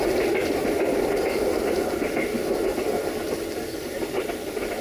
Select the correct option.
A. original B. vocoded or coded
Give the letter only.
A